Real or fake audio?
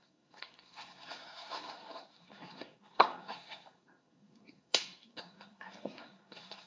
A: fake